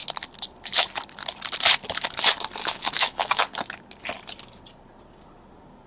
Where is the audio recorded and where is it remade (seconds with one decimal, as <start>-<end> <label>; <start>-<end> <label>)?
0.0-2.6 recorded; 2.6-3.4 remade; 3.4-5.9 recorded